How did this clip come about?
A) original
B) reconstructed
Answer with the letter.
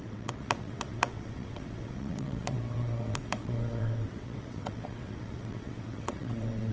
B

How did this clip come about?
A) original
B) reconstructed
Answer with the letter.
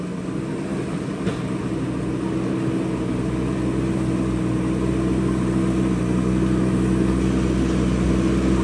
A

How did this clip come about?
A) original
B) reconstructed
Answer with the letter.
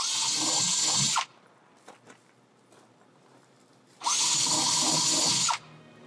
A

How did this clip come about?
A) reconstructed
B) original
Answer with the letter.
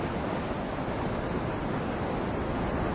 B